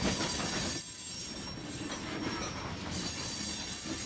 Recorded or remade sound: recorded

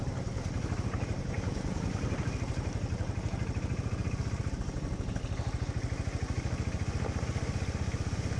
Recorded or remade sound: recorded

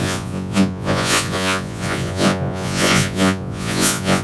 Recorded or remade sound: remade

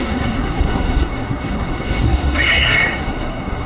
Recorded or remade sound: remade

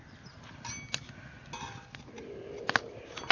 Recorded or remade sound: recorded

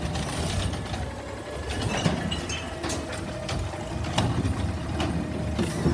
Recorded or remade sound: recorded